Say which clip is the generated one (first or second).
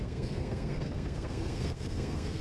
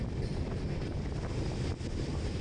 first